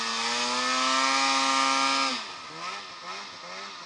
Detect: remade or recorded recorded